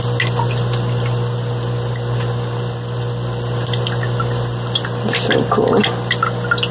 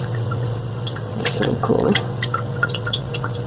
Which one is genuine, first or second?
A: first